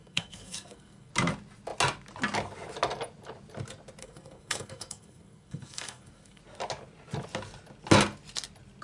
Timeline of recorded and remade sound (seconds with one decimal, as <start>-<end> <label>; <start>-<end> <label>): 0.0-1.1 remade; 1.1-4.0 recorded; 4.0-6.4 remade; 6.4-8.8 recorded